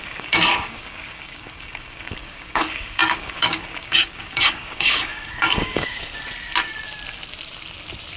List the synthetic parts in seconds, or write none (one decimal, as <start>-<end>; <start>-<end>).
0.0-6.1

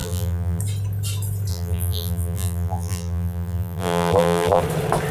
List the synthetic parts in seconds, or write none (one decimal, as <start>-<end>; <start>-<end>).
0.0-0.6; 1.5-4.6

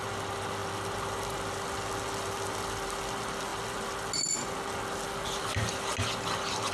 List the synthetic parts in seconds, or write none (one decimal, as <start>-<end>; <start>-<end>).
none

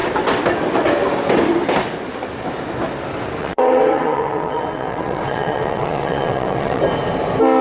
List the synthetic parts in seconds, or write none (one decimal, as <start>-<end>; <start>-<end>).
3.4-6.8